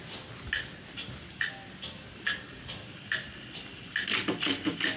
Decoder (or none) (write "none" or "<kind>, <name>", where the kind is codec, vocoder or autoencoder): none